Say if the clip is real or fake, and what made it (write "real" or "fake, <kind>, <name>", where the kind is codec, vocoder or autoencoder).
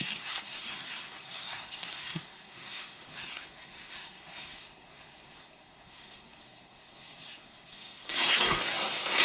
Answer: fake, codec, SNAC